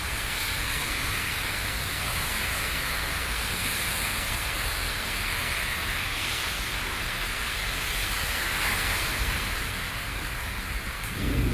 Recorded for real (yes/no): no